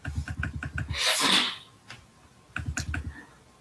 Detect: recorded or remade recorded